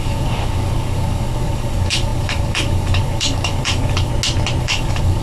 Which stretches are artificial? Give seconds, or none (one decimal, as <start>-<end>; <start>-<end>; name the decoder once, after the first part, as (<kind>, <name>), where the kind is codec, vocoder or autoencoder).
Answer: 0.0-4.1 (codec, DAC); 4.6-5.2